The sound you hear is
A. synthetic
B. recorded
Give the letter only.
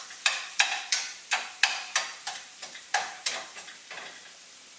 A